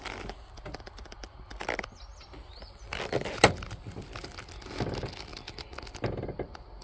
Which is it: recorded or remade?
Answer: recorded